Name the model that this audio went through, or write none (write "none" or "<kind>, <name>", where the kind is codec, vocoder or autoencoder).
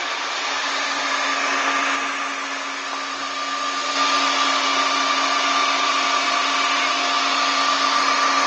none